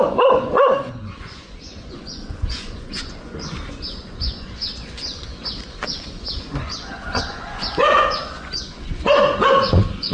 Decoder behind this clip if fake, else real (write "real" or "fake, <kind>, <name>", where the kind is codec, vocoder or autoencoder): fake, vocoder, Vocos